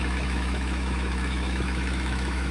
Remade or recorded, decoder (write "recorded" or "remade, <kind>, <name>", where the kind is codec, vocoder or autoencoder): remade, autoencoder, DAC-VAE